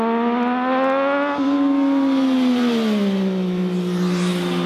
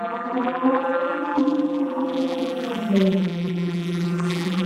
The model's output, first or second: second